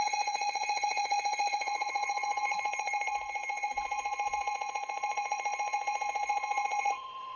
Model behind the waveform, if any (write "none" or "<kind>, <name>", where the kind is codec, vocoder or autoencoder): vocoder, WaveNeXt